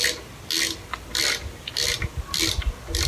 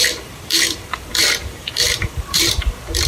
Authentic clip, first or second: first